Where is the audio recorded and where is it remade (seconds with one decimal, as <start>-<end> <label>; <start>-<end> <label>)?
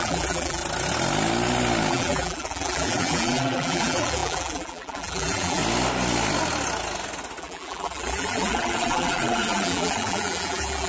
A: 0.0-0.6 remade; 0.6-1.9 recorded; 1.9-5.6 remade; 5.6-7.4 recorded; 7.4-10.9 remade